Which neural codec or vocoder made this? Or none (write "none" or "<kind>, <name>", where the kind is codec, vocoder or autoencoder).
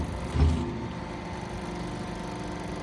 none